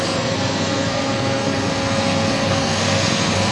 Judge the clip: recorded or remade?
remade